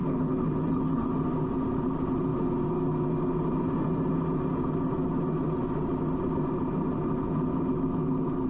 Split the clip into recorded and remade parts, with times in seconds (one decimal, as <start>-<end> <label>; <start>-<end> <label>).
0.0-1.1 remade; 1.1-8.5 recorded